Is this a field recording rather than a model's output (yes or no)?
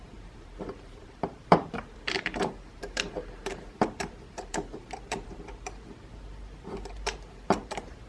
no